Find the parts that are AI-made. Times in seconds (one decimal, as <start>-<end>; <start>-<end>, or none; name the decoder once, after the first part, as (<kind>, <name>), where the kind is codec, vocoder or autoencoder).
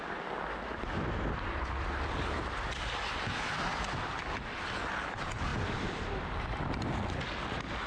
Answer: none